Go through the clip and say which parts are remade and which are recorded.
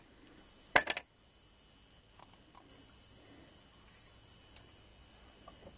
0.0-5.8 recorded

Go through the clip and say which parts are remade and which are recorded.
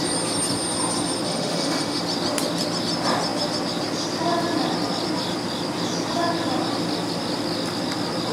0.0-1.3 recorded; 1.3-2.0 remade; 2.0-8.3 recorded